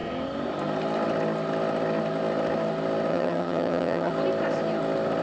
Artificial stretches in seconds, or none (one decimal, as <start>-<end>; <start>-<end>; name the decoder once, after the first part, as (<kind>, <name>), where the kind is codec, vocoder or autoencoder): 3.1-4.1 (vocoder, HiFi-GAN)